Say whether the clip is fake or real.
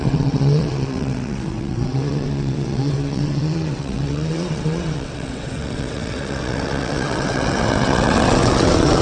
fake